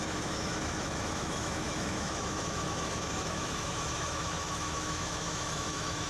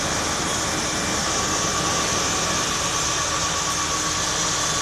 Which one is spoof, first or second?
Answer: first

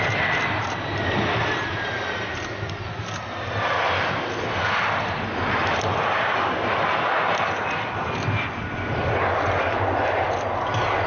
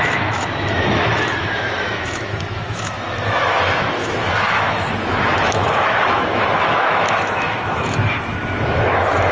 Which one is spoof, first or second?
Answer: second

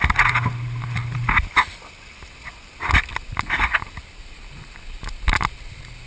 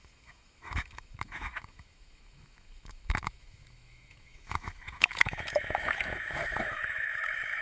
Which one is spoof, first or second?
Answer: second